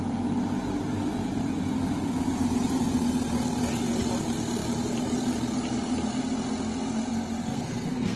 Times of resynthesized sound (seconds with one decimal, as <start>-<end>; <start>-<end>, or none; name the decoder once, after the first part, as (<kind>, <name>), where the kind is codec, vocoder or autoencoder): 7.5-8.2 (codec, SNAC)